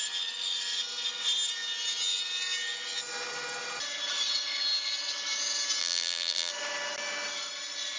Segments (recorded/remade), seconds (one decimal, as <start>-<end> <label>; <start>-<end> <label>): 0.0-5.8 recorded; 5.8-6.5 remade; 6.5-8.0 recorded